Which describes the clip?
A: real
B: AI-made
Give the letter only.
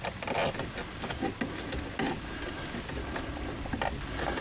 A